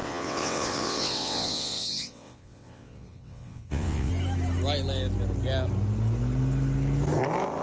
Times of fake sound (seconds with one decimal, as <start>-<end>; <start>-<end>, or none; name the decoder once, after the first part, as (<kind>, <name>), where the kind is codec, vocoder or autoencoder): 0.0-4.1 (vocoder, WaveNeXt)